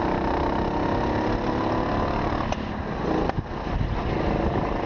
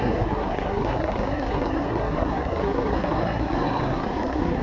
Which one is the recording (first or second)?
first